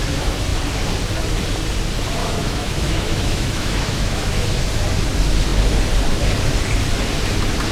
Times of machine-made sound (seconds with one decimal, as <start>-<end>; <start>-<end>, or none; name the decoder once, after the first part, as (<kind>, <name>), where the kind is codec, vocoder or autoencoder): 2.2-4.7 (autoencoder, DAC-VAE)